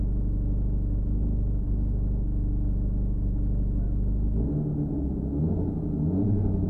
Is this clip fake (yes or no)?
no